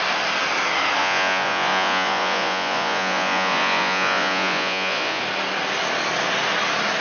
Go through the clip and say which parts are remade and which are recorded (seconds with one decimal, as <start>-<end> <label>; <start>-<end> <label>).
0.0-1.0 recorded; 1.0-5.2 remade; 5.2-7.0 recorded